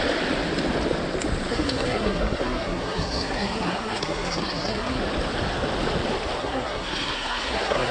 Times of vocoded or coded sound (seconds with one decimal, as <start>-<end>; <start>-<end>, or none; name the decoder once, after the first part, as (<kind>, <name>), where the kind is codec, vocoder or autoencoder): 1.5-5.0 (codec, SNAC); 6.4-7.9